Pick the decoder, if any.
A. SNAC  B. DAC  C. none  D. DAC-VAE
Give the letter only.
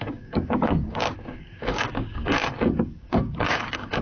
B